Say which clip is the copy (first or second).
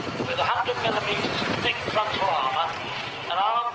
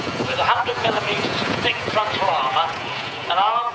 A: second